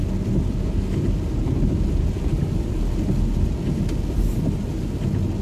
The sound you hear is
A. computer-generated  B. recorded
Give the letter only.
B